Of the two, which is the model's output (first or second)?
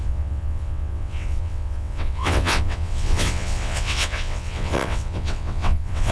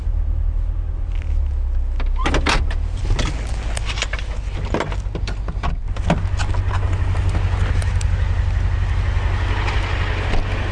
first